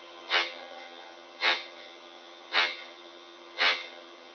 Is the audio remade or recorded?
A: remade